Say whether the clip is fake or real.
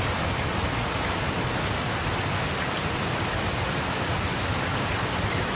real